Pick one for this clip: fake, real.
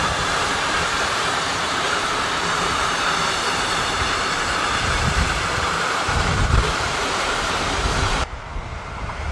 fake